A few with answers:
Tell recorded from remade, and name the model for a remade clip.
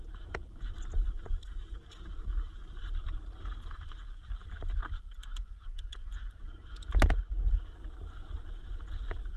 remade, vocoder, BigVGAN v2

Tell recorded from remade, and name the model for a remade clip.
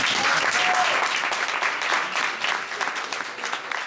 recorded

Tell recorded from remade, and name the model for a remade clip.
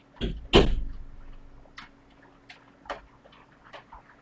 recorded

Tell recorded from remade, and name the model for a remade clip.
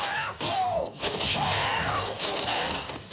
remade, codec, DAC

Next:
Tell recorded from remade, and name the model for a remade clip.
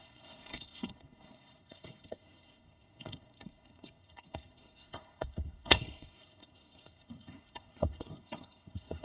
remade, codec, SNAC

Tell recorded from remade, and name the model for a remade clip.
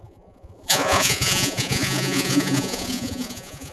remade, vocoder, Vocos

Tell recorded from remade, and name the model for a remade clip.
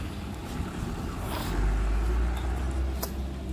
recorded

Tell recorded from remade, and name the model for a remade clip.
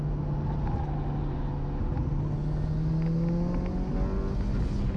recorded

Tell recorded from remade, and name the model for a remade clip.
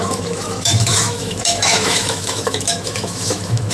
remade, autoencoder, DAC-VAE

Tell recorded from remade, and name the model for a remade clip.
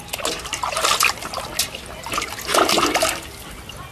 recorded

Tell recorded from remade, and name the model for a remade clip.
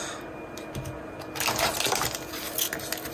recorded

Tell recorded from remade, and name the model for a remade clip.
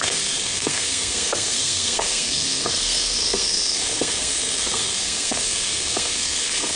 remade, codec, SNAC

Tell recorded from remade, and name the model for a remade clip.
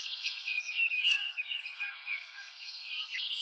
remade, codec, SNAC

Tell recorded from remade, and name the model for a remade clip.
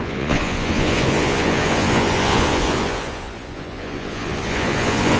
remade, vocoder, Vocos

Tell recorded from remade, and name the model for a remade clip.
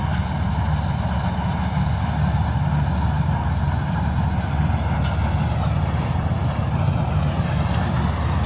recorded